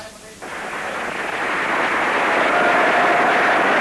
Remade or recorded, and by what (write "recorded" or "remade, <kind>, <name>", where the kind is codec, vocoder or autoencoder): recorded